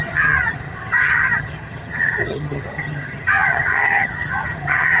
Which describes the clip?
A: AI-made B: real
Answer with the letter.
A